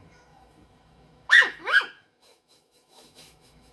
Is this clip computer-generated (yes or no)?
yes